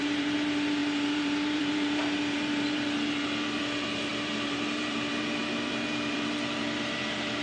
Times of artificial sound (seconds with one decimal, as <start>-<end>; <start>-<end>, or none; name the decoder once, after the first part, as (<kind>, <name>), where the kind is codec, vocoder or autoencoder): 0.0-7.4 (vocoder, BigVGAN v2)